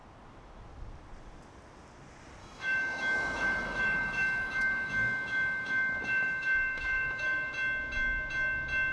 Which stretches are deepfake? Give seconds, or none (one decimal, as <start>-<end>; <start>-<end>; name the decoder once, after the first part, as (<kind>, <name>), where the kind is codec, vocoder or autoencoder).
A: 2.4-7.5 (autoencoder, DAC-VAE)